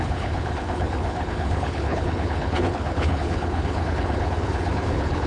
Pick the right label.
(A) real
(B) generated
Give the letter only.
B